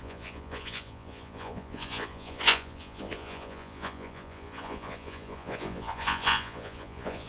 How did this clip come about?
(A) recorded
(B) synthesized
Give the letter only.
B